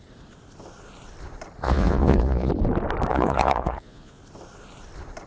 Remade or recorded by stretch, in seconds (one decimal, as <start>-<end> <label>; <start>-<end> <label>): 0.0-1.6 recorded; 1.6-2.5 remade; 2.5-3.1 recorded; 3.1-4.2 remade; 4.2-5.3 recorded